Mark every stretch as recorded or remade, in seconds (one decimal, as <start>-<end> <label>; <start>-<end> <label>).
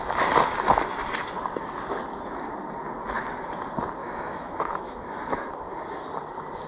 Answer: 0.0-4.0 recorded; 4.0-5.5 remade; 5.5-6.7 recorded